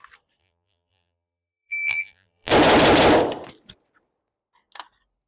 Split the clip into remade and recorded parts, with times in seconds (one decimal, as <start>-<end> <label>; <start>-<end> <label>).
0.0-0.4 recorded; 0.4-2.5 remade; 2.5-5.3 recorded